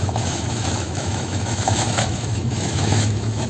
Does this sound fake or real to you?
fake